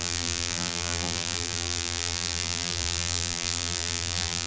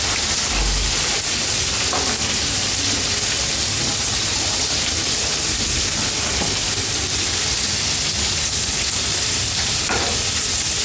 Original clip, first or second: second